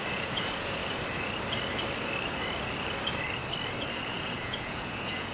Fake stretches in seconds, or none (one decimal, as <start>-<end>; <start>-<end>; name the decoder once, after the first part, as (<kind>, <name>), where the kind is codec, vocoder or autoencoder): 0.0-0.8 (vocoder, Vocos); 4.0-5.3